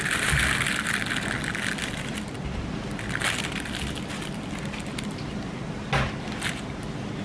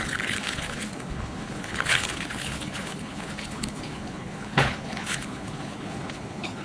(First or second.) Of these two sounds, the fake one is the second